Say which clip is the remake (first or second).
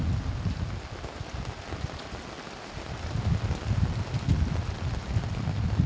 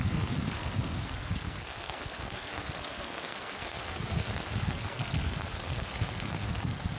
second